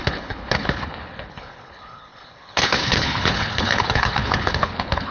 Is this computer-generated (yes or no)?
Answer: yes